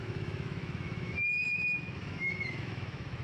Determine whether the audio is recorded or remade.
remade